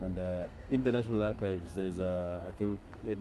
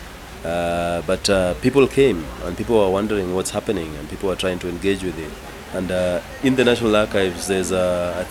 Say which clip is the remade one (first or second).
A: first